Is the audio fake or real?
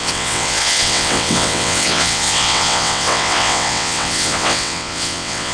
fake